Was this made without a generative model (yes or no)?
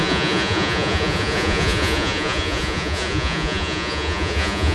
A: no